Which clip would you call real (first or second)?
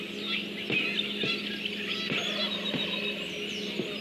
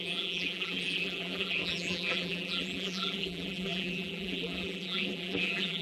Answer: first